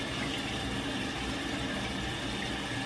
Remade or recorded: recorded